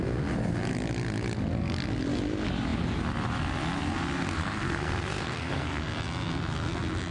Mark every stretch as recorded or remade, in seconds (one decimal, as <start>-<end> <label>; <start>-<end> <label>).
0.0-4.4 recorded; 4.4-5.8 remade; 5.8-7.1 recorded